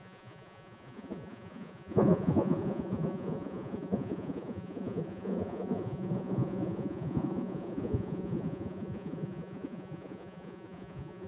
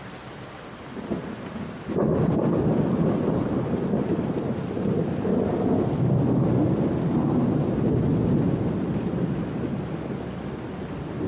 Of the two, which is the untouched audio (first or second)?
second